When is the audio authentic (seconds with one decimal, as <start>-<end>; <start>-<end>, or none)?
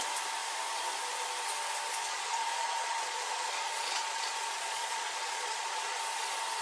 0.0-2.0; 6.0-6.6